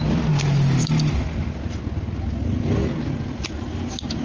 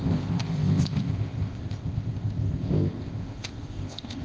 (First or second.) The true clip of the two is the first